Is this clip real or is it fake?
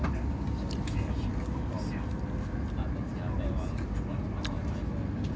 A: real